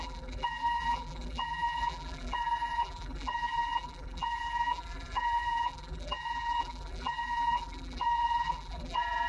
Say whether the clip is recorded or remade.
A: remade